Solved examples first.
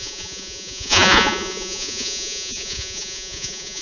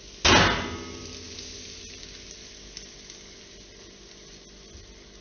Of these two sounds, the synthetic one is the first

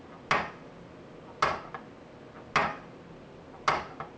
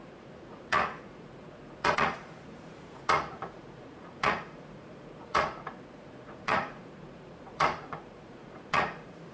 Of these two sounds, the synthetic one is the second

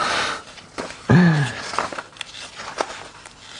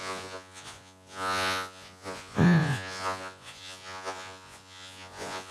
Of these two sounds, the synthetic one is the second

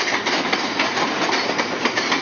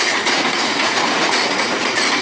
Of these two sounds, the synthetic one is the second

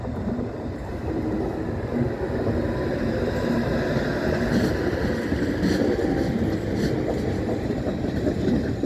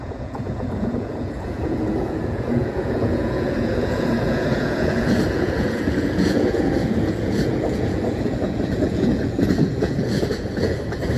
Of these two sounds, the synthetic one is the second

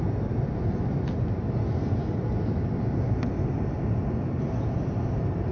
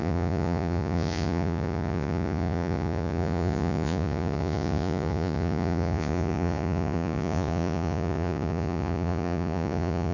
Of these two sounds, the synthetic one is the second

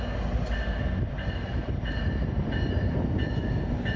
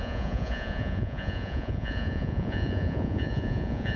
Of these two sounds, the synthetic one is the second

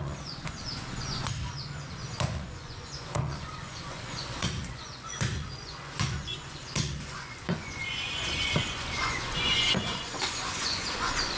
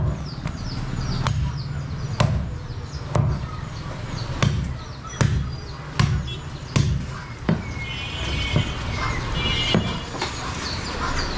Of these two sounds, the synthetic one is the first